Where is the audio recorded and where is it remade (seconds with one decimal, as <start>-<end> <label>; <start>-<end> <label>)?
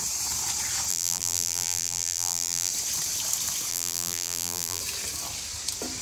0.0-0.9 recorded; 0.9-2.7 remade; 2.7-3.7 recorded; 3.7-4.8 remade; 4.8-6.0 recorded